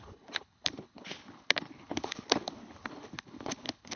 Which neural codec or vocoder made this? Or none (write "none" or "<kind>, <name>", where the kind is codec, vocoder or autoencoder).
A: codec, HILCodec